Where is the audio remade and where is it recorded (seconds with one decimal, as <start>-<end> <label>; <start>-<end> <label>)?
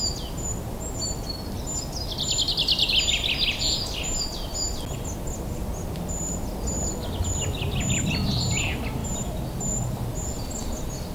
0.0-11.1 recorded